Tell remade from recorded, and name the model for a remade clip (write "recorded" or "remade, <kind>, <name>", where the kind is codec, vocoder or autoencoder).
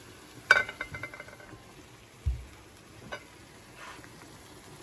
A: recorded